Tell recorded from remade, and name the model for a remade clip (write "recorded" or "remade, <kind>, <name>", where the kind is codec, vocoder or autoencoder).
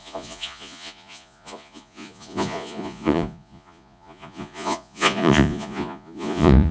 remade, vocoder, Vocos